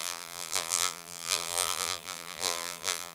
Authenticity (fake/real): fake